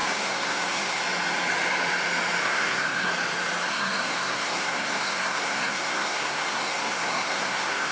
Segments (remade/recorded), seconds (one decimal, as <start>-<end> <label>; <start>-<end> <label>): 0.0-1.0 remade; 1.0-2.4 recorded; 2.4-3.1 remade; 3.1-3.7 recorded; 3.7-7.9 remade